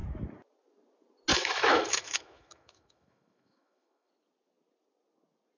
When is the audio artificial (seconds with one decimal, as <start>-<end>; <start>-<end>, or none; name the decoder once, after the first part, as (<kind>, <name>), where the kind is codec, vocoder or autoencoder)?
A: 1.3-4.1 (autoencoder, DAC-VAE)